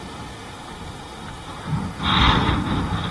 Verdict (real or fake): fake